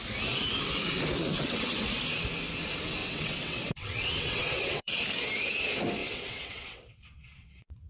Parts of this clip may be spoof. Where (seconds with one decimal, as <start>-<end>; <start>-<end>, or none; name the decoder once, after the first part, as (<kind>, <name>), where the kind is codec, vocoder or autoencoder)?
1.2-1.7 (vocoder, WaveNeXt); 3.0-5.0; 6.0-7.9